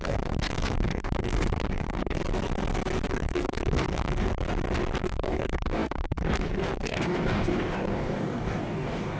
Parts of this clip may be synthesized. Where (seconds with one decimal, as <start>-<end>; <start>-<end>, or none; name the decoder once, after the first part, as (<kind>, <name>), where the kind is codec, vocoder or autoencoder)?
0.0-2.2 (codec, DAC); 3.1-4.3; 5.0-9.2